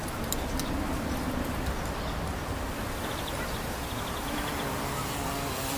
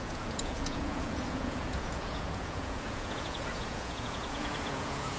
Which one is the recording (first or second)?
first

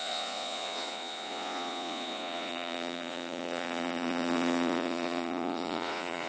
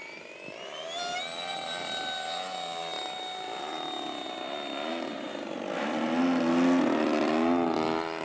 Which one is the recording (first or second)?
second